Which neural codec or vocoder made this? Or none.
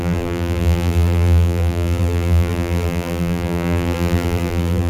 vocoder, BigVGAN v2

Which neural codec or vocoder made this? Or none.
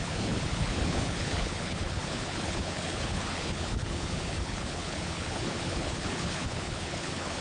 codec, HILCodec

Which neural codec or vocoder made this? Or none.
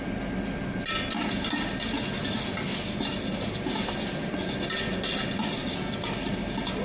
none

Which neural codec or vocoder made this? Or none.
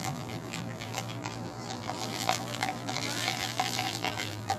vocoder, BigVGAN v2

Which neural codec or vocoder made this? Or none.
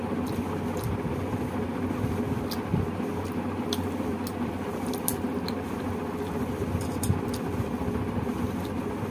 none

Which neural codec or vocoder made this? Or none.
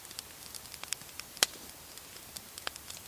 none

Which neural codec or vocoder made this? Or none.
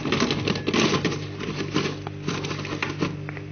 none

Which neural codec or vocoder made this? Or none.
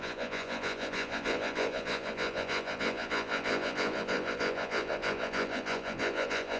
vocoder, Vocos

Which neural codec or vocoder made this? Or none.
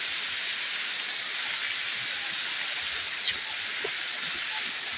none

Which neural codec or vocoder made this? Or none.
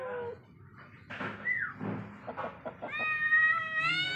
none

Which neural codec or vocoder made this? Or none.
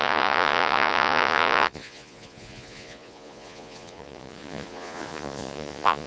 vocoder, Vocos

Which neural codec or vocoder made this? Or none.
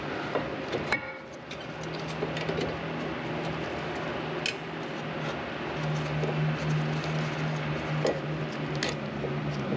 none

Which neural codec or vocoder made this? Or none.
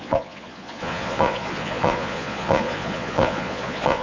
vocoder, Vocos